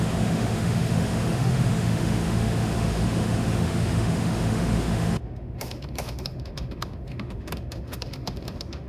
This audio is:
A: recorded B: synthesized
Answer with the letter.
B